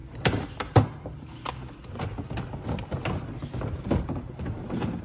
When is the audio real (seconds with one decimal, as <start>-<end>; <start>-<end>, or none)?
2.1-3.8